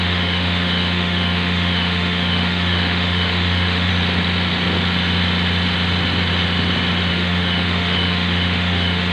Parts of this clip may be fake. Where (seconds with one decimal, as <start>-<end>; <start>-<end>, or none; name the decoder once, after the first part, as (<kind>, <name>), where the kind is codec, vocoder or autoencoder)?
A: 0.0-3.9 (autoencoder, DAC-VAE); 7.1-9.1